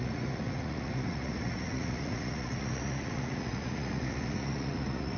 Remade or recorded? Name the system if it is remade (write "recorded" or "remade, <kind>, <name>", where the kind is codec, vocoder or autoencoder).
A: remade, vocoder, Vocos